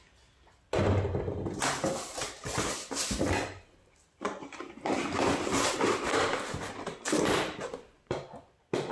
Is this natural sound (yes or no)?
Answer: yes